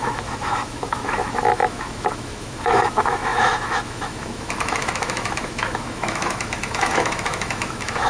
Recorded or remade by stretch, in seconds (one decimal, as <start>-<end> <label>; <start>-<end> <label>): 0.0-8.1 remade